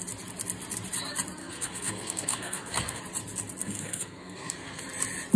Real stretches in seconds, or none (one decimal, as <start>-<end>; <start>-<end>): 0.0-1.4; 3.0-3.6; 4.8-5.4